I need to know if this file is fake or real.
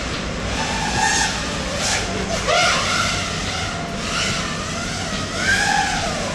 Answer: real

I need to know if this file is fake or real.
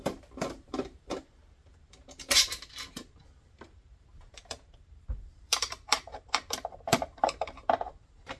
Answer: fake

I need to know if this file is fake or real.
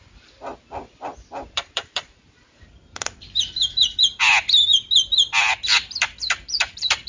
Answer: fake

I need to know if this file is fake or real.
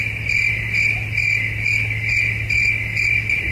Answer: real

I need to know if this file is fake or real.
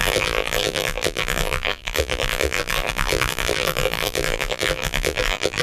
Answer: fake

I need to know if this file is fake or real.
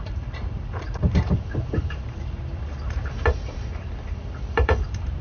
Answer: fake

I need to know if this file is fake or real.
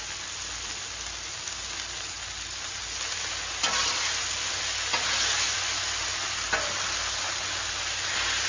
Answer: real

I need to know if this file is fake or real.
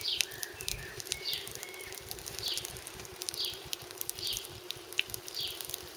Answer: fake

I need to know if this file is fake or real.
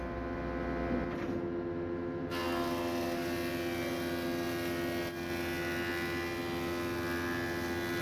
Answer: real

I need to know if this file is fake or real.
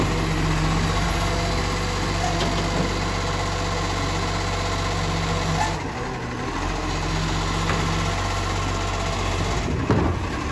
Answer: real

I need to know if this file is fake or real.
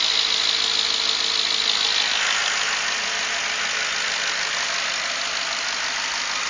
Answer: real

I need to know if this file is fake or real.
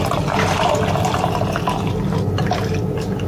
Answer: fake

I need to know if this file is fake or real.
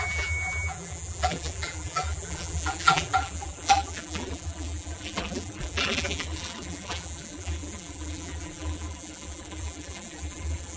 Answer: fake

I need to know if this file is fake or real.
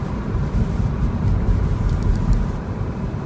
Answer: fake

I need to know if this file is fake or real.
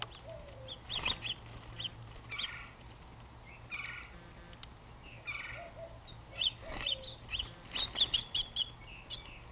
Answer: real